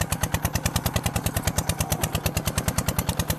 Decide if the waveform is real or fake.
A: real